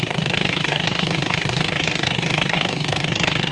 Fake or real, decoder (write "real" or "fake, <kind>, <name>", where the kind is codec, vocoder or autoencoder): fake, codec, SNAC